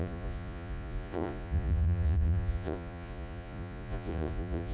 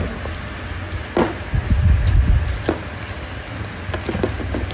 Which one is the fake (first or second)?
first